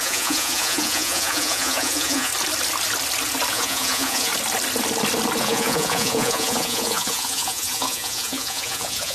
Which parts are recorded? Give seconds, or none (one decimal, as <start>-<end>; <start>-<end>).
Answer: 2.3-3.5; 4.3-5.4

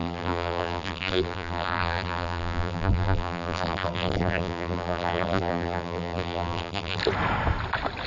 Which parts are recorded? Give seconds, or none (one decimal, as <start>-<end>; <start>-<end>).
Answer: 7.0-8.1

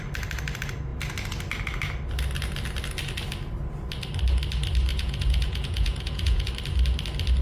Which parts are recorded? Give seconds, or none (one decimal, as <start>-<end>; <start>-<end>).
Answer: 0.0-4.9; 6.5-7.4

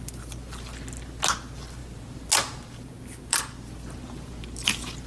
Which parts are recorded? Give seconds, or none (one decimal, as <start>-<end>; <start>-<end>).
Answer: 0.0-5.1

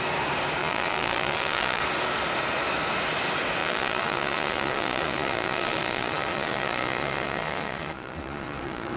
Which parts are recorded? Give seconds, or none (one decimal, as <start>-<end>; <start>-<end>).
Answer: 0.0-0.6; 1.8-3.6

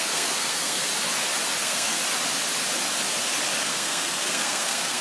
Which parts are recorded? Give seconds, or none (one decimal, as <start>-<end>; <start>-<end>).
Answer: 0.9-1.6; 2.0-3.7

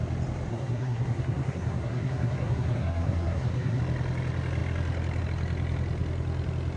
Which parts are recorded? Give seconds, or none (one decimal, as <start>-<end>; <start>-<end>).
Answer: 0.0-0.5; 3.8-6.8

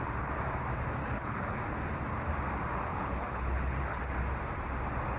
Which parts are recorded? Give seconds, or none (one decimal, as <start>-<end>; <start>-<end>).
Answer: 0.0-1.0; 1.6-2.9; 4.0-5.2